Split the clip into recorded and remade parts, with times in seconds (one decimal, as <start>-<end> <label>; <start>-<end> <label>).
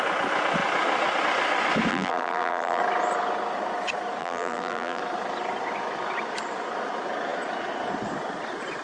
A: 0.0-1.9 recorded; 1.9-2.8 remade; 2.8-4.2 recorded; 4.2-5.0 remade; 5.0-8.8 recorded